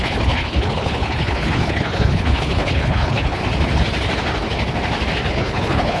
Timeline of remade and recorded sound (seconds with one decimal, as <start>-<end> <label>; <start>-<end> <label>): 0.0-3.4 remade; 3.4-5.3 recorded; 5.3-6.0 remade